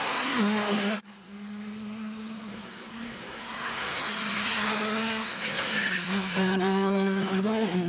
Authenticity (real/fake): fake